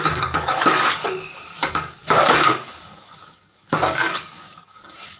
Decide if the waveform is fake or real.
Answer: fake